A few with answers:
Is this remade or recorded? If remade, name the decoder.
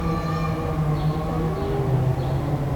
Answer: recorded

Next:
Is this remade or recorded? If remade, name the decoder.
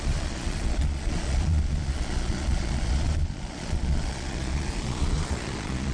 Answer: remade, vocoder, Vocos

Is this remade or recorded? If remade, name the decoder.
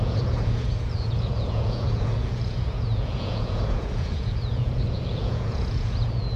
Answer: remade, vocoder, Vocos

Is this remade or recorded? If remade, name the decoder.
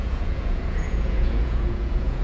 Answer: remade, vocoder, Vocos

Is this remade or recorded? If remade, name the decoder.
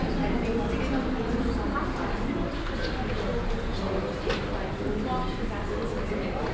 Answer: recorded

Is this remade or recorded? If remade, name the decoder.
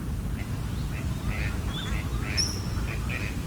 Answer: recorded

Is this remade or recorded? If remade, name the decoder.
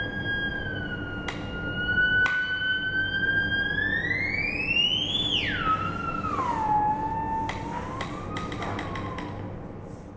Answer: recorded